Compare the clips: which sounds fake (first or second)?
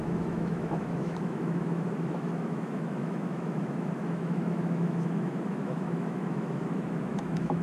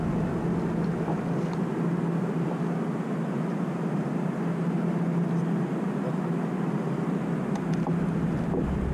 first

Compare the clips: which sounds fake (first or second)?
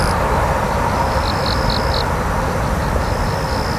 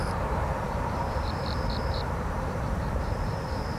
second